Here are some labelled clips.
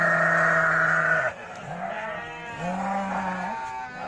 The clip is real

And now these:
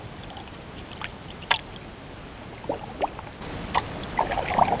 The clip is real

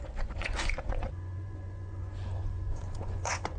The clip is fake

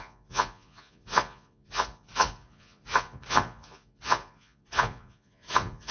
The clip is fake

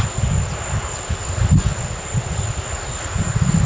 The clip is real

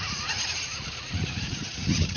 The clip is fake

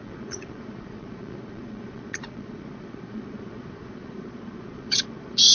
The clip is fake